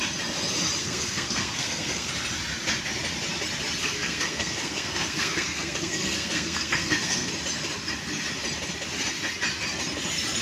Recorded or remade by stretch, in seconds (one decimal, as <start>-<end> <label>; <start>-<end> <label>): 0.0-0.8 recorded; 0.8-2.1 remade; 2.1-3.8 recorded; 3.8-7.3 remade; 7.3-10.4 recorded